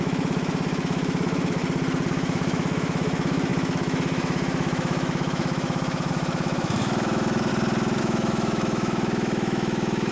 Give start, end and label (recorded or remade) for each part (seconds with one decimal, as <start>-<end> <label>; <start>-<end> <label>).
0.0-1.6 remade; 1.6-2.1 recorded; 2.1-7.5 remade; 7.5-8.0 recorded; 8.0-10.1 remade